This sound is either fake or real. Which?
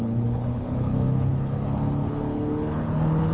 fake